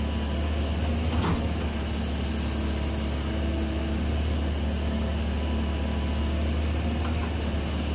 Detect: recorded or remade recorded